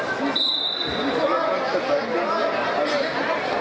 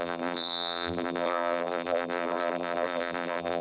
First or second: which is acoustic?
first